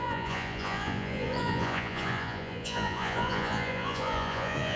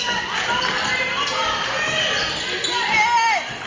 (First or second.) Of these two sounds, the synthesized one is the first